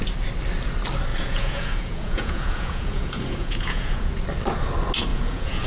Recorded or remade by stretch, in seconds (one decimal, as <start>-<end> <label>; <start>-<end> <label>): 0.0-1.1 recorded; 1.1-4.1 remade; 4.1-5.1 recorded; 5.1-5.7 remade